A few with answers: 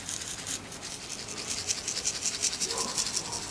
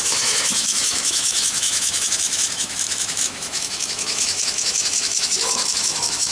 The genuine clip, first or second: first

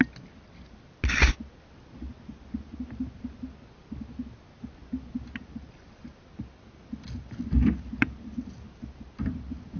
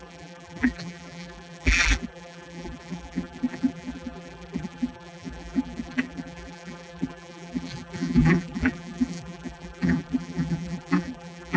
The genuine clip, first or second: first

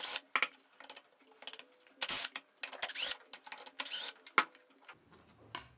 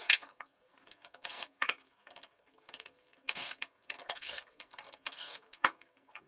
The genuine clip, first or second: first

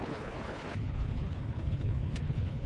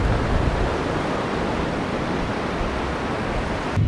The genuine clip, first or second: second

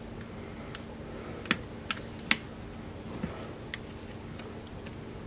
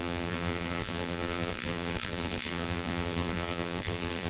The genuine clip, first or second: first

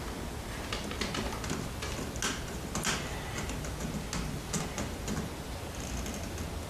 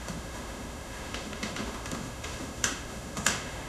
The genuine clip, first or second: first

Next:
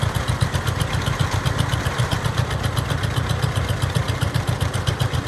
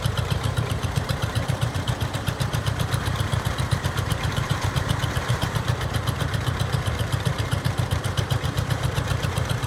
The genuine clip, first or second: first